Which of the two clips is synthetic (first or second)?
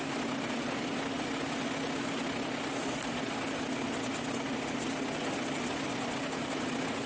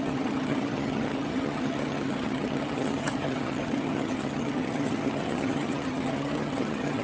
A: second